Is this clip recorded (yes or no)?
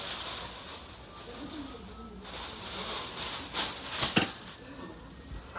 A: yes